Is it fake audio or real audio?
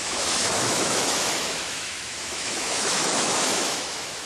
fake